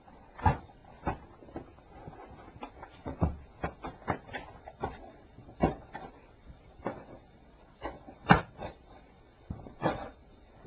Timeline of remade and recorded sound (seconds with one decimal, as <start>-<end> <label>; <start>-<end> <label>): 0.0-0.8 remade; 0.8-2.7 recorded; 2.7-3.3 remade; 3.3-4.6 recorded; 4.6-10.7 remade